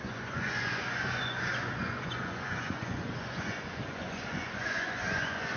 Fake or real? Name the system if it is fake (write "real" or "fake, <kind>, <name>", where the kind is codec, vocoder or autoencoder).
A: fake, vocoder, Vocos